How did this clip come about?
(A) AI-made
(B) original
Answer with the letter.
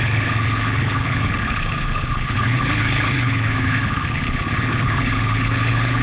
A